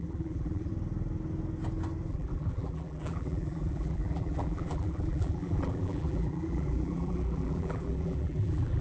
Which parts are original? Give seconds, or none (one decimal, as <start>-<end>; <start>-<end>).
0.7-2.1